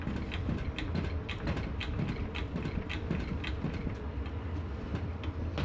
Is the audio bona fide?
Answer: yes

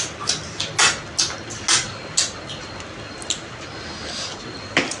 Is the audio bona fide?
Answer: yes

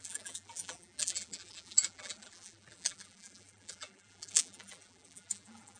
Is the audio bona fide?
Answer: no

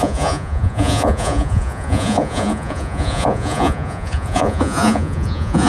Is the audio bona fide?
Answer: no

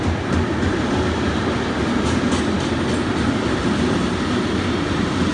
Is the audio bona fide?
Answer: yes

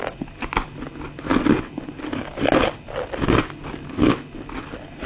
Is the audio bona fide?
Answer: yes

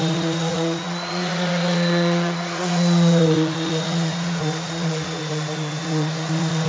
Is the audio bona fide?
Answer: no